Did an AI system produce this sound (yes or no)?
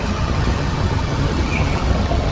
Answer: yes